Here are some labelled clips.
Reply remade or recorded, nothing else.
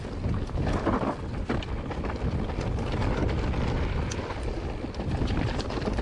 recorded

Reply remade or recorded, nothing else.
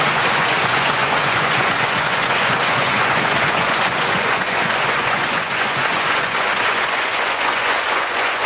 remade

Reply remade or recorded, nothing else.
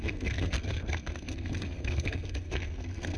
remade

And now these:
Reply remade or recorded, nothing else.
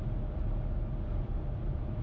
recorded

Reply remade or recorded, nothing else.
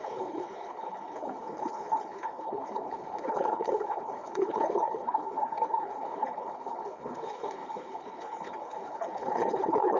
remade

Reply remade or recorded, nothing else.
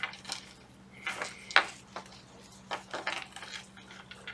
recorded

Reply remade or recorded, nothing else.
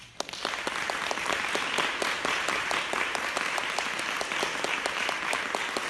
recorded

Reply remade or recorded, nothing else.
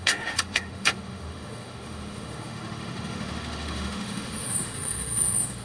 remade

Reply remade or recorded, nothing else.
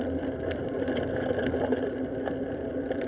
recorded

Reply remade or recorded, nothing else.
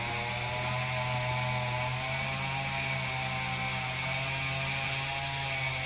recorded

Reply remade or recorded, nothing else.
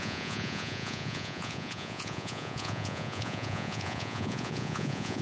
remade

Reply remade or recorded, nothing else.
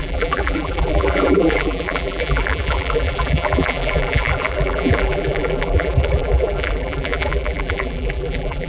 remade